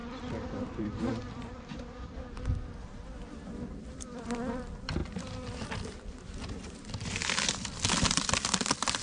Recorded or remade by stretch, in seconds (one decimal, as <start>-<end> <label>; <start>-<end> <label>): 0.0-1.7 remade; 1.7-3.7 recorded; 3.7-9.0 remade